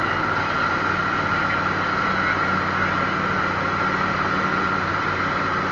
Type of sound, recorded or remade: recorded